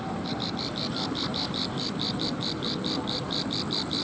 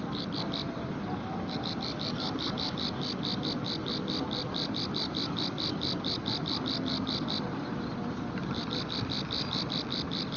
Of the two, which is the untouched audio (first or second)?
second